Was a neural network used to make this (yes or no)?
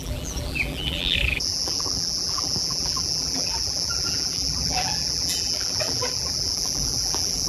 yes